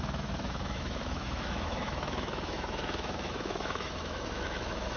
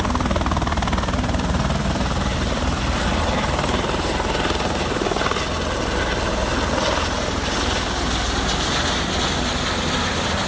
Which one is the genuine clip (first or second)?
second